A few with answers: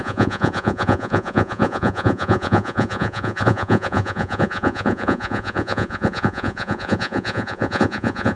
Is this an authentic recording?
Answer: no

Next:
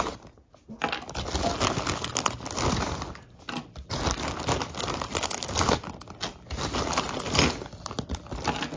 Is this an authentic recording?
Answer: yes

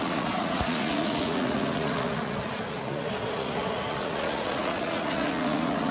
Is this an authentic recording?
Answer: no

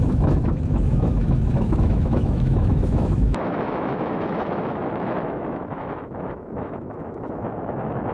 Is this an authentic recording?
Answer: no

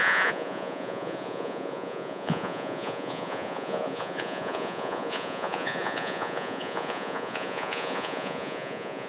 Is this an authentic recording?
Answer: no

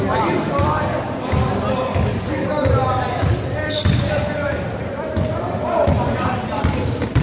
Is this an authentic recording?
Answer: no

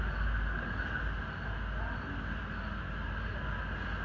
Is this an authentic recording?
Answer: yes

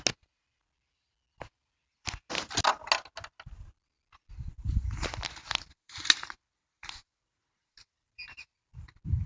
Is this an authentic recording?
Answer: yes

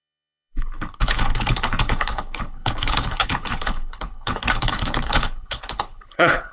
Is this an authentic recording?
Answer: no